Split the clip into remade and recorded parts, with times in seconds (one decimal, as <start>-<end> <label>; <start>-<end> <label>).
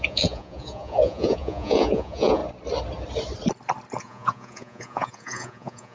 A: 0.0-2.4 remade; 2.4-4.0 recorded; 4.0-5.9 remade